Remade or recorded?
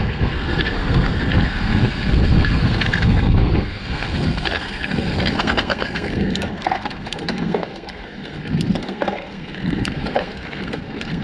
remade